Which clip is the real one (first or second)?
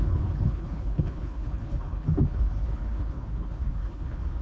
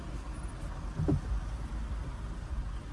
second